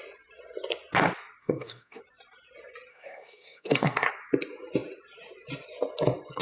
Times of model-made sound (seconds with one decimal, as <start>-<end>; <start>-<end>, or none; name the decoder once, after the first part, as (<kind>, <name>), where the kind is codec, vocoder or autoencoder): 1.4-2.0 (codec, SNAC); 2.9-4.1